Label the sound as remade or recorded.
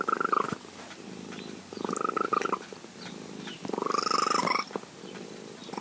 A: recorded